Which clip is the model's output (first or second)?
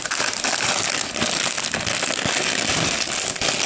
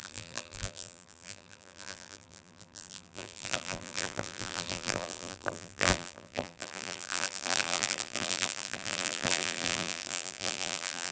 second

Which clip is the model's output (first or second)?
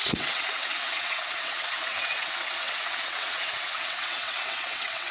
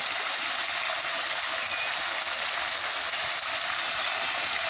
first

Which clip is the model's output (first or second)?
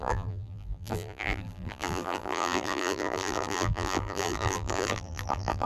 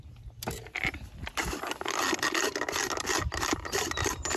first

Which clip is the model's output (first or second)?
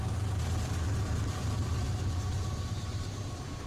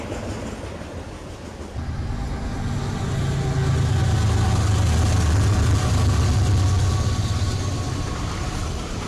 first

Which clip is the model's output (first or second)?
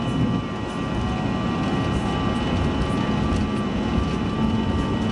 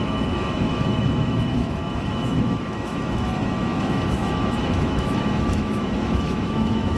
second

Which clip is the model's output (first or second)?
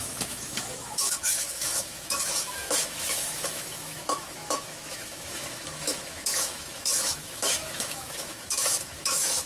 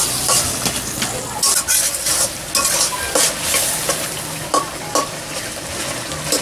first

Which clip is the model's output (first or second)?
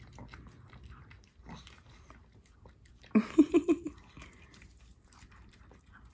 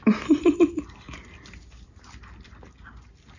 first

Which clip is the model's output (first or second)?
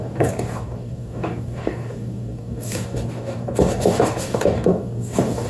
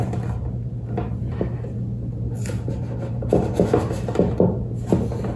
first